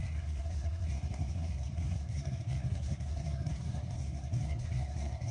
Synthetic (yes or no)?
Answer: yes